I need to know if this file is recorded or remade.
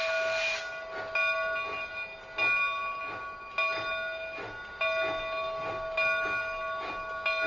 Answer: recorded